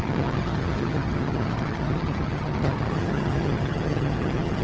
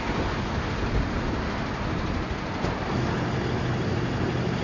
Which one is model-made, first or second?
first